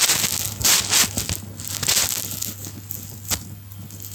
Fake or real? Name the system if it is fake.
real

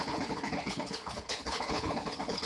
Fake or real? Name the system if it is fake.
fake, codec, HILCodec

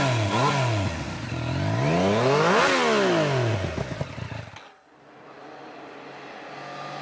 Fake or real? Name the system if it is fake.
real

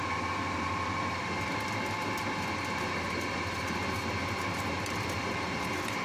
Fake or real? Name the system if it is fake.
fake, vocoder, BigVGAN v2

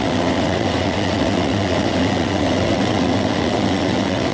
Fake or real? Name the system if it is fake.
fake, vocoder, WaveNeXt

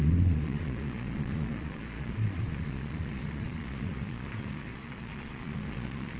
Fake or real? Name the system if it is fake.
fake, vocoder, Vocos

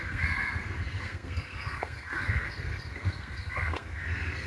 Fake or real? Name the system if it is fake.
fake, codec, SNAC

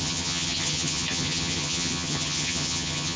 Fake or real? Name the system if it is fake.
fake, vocoder, HiFi-GAN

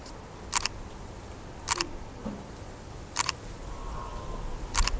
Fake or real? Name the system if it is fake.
real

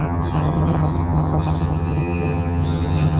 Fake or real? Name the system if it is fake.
fake, vocoder, HiFi-GAN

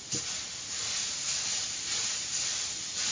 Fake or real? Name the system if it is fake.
real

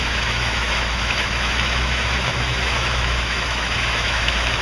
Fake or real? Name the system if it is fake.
fake, autoencoder, DAC-VAE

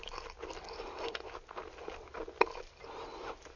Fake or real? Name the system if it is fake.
real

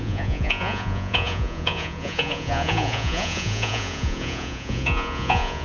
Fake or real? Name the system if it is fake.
fake, vocoder, Vocos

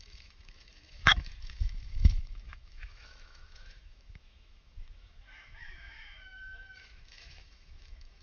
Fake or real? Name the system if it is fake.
fake, autoencoder, DAC-VAE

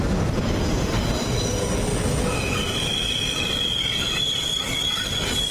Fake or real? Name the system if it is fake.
fake, vocoder, BigVGAN v2